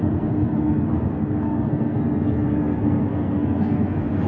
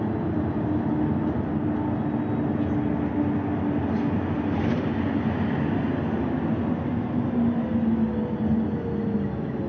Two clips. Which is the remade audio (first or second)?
first